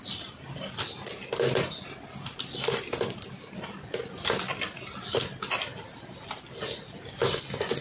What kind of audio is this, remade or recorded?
recorded